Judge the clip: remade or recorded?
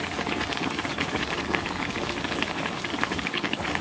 remade